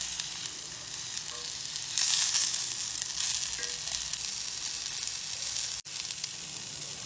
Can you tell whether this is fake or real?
real